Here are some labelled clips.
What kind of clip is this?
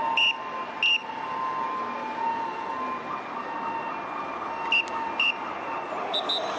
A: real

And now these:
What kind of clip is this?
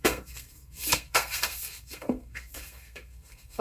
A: fake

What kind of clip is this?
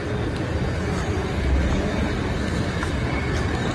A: real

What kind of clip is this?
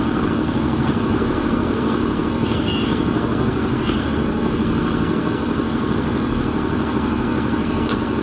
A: fake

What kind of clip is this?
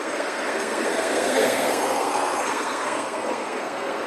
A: fake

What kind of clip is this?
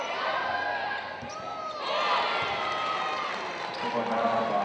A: real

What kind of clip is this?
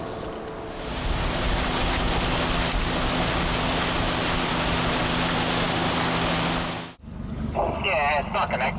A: real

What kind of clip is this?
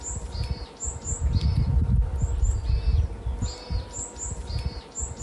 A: real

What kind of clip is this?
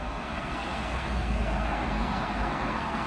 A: fake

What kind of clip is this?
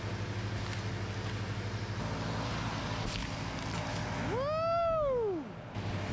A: real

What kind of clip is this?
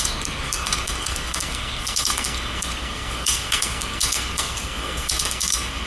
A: fake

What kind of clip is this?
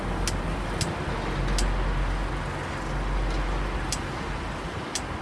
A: real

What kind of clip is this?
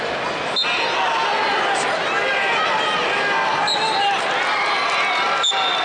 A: real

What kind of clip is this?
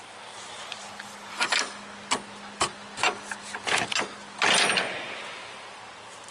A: real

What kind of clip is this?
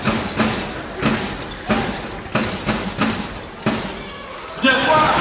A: real